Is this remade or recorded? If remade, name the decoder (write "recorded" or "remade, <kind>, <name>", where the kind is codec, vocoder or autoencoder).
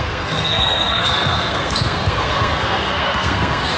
remade, codec, SNAC